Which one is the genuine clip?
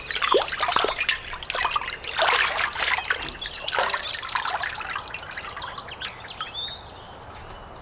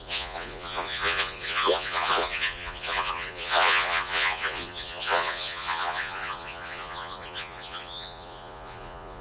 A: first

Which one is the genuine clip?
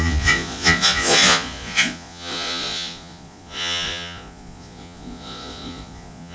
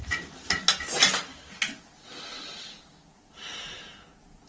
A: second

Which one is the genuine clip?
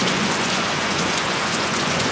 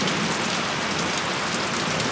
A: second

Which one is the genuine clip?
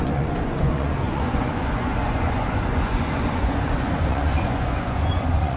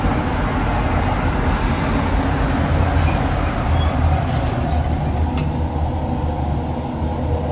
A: second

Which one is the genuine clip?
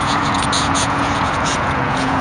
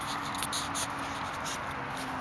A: second